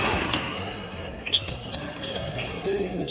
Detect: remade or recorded remade